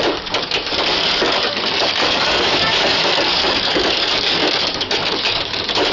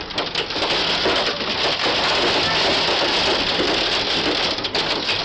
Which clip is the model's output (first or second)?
first